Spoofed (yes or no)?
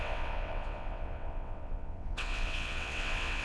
yes